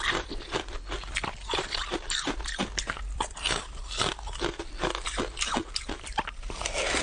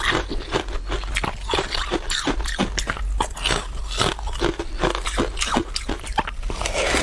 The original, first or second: second